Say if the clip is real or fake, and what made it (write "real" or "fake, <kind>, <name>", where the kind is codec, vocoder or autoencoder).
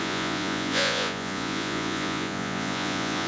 fake, vocoder, Vocos